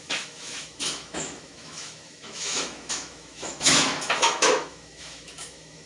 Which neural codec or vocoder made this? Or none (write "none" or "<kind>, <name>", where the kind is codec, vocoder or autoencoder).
autoencoder, DAC-VAE